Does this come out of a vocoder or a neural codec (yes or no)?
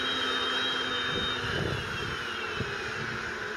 no